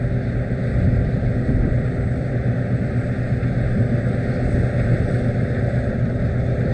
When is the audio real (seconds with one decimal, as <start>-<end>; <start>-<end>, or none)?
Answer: 0.0-6.7